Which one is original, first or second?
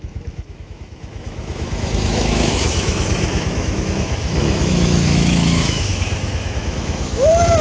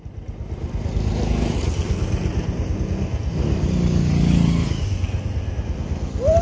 second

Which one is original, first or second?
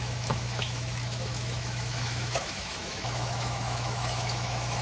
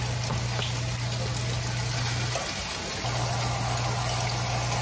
second